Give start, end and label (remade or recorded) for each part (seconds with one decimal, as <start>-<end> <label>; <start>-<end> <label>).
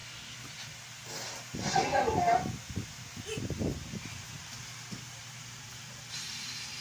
0.0-3.4 recorded; 3.4-6.8 remade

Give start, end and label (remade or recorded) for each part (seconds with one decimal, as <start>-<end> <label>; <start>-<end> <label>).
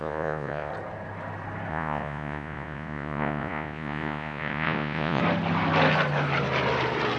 0.0-0.7 remade; 0.7-1.7 recorded; 1.7-5.2 remade; 5.2-7.2 recorded